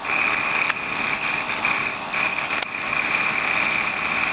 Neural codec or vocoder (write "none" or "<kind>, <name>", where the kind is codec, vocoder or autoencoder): none